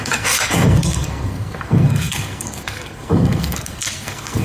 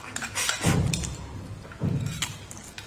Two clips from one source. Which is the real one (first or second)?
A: second